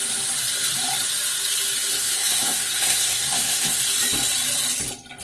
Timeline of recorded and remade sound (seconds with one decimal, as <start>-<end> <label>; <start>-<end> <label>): 0.0-1.9 recorded; 1.9-3.8 remade; 3.8-5.2 recorded